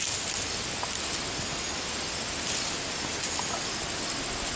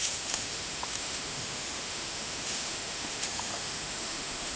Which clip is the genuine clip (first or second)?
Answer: first